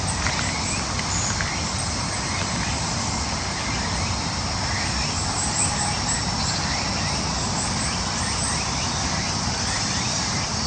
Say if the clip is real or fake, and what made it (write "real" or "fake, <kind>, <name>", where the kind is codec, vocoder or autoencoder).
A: real